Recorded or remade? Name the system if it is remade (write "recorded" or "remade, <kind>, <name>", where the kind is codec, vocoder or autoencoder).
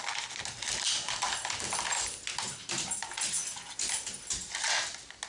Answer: recorded